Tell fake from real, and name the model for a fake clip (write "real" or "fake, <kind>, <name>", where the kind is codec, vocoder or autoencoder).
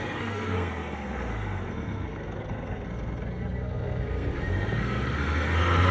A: fake, codec, SNAC